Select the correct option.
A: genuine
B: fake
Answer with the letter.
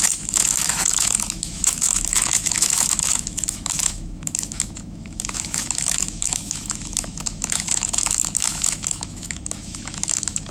B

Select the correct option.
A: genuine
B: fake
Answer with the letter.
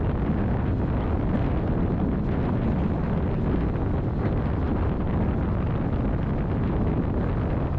A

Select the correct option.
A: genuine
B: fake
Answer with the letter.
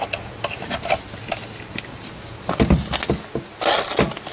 A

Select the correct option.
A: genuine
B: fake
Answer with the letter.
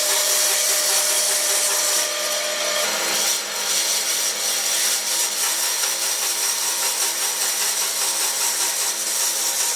A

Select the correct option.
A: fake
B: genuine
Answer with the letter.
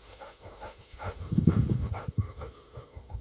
A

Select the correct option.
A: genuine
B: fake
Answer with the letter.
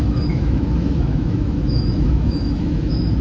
B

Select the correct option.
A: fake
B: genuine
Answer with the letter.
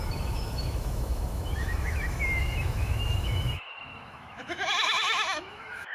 A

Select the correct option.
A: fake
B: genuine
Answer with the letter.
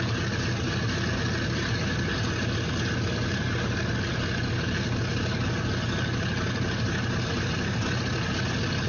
B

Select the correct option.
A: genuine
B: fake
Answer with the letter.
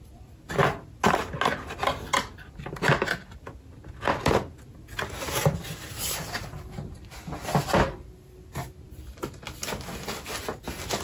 A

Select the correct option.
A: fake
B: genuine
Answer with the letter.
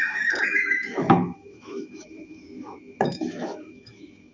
A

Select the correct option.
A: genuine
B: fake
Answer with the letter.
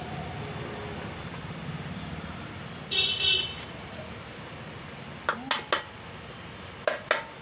A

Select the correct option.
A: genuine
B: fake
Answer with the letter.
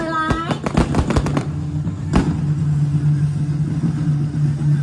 A